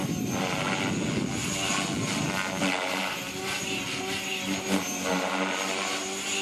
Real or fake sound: real